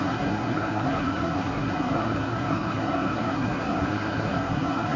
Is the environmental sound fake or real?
fake